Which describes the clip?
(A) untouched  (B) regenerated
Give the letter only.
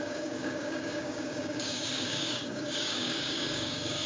B